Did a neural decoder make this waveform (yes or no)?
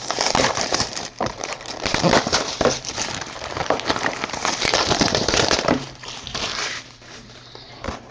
yes